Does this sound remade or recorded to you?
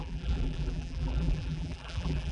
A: remade